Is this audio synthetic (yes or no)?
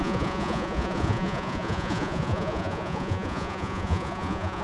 yes